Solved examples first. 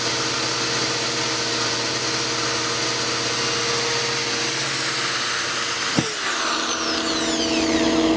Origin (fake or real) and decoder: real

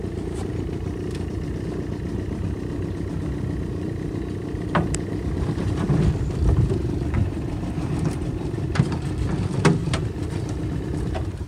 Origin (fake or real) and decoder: fake, vocoder, BigVGAN v2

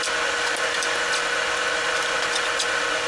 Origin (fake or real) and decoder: real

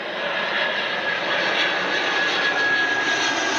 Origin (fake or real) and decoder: real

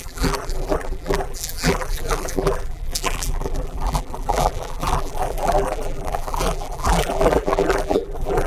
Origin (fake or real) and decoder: fake, vocoder, BigVGAN v2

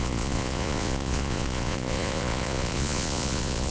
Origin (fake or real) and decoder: fake, vocoder, Vocos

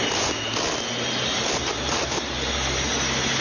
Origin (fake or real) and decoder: real